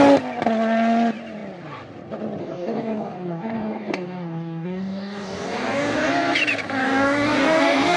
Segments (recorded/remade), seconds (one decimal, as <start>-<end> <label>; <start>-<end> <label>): 0.0-2.4 recorded; 2.4-6.1 remade; 6.1-6.8 recorded; 6.8-8.0 remade